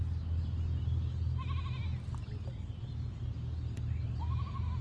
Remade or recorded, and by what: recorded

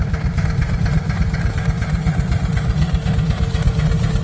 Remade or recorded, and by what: recorded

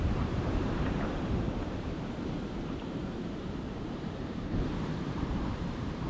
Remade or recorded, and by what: remade, vocoder, BigVGAN v2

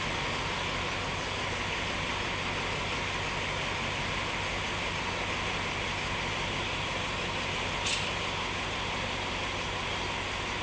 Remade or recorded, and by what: recorded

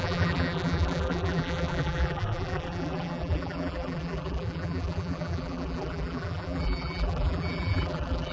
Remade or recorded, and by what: remade, vocoder, BigVGAN v2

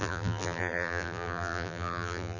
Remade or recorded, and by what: remade, vocoder, BigVGAN v2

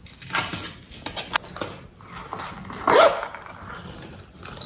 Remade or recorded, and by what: recorded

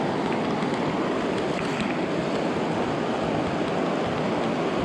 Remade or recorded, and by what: recorded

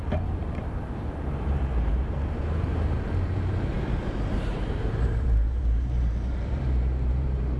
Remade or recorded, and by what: remade, vocoder, BigVGAN v2